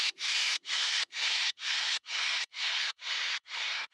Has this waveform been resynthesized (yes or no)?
yes